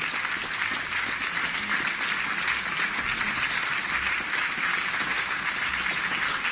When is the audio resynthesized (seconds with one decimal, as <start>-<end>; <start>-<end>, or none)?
4.7-5.7